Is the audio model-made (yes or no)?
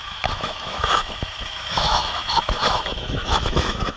yes